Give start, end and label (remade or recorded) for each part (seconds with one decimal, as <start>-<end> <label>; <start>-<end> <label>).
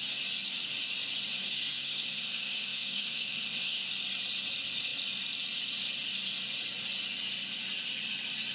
0.0-1.3 recorded; 1.3-3.9 remade; 3.9-8.5 recorded